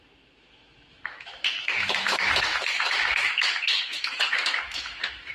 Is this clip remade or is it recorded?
remade